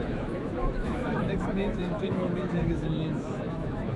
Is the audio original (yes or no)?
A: no